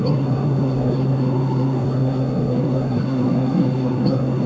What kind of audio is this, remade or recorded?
remade